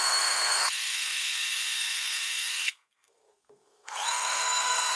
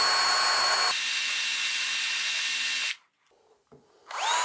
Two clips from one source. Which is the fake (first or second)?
first